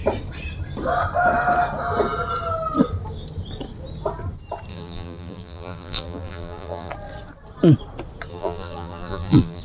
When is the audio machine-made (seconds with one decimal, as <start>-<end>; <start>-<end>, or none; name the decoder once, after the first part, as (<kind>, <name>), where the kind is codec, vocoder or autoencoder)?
4.7-6.9 (vocoder, BigVGAN v2); 8.3-9.6